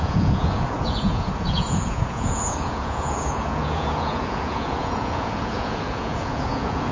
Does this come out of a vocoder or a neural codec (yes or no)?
yes